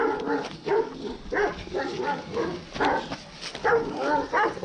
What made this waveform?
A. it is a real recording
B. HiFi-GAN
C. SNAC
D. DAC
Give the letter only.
A